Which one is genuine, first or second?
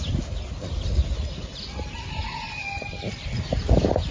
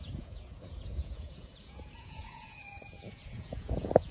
first